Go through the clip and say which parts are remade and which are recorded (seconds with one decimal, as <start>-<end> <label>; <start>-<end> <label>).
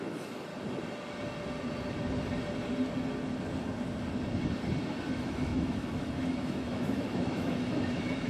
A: 0.0-0.5 remade; 0.5-5.1 recorded; 5.1-8.3 remade